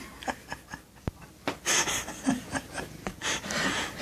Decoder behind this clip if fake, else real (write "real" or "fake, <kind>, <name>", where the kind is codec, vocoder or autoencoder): real